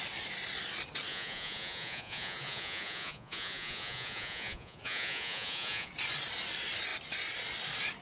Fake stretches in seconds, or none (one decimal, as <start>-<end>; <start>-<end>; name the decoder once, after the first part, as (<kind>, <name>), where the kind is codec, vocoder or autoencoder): 1.1-5.9 (vocoder, Vocos)